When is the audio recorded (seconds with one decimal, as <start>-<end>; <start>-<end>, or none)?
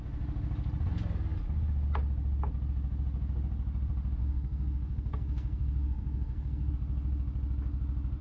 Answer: 0.0-4.2; 6.7-8.2